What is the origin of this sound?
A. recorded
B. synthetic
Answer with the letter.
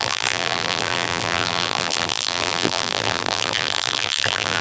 B